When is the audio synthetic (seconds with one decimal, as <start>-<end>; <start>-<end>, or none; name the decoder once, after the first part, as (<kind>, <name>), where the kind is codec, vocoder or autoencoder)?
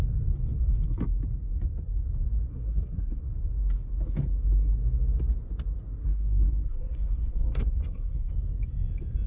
2.5-3.2 (codec, SNAC); 6.0-8.3